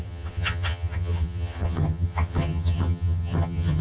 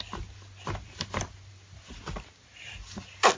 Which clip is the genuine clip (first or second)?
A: second